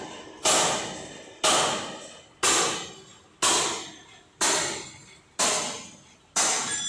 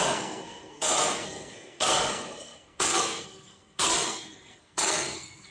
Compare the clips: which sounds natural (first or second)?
first